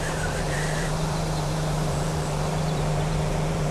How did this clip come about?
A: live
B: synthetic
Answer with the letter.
B